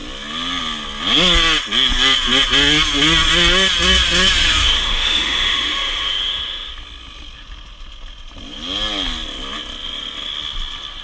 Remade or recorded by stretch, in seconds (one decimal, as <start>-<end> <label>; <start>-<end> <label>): 0.0-4.6 recorded; 4.6-6.7 remade; 6.7-11.0 recorded